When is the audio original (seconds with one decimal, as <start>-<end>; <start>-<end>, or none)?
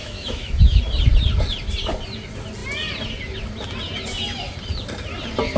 0.8-5.6